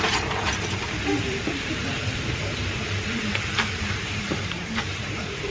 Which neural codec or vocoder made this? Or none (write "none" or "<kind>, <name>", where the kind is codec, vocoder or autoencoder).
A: vocoder, BigVGAN v2